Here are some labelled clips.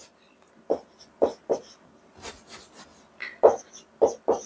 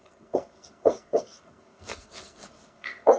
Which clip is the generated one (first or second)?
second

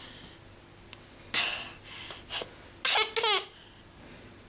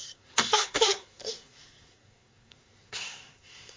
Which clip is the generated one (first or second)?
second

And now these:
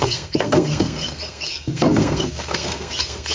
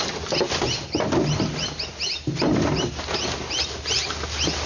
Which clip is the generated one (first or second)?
first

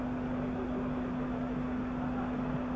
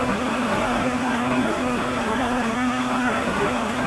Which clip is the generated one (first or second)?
second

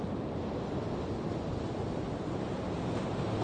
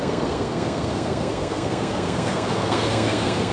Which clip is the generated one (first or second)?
second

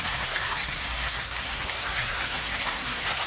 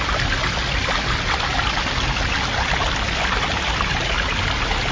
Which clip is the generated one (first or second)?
first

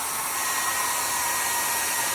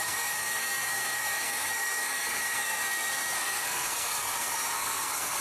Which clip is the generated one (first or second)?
second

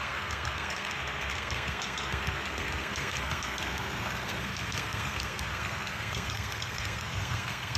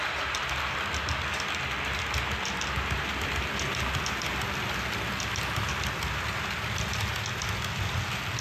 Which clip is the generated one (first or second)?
first